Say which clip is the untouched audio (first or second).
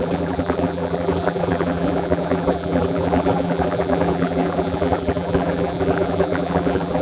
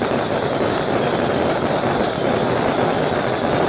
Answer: second